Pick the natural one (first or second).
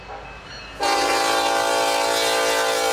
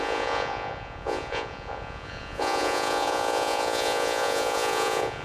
first